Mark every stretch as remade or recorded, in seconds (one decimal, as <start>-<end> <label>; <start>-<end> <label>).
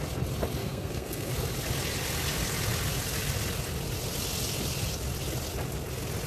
0.0-0.6 recorded; 0.6-1.3 remade; 1.3-6.3 recorded